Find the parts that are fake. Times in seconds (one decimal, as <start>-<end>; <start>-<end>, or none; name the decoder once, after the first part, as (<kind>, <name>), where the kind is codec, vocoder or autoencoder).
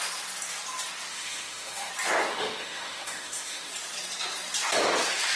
1.1-1.9 (autoencoder, DAC-VAE); 2.3-3.7